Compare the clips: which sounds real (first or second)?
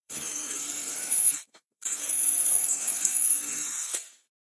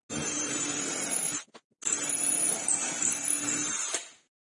second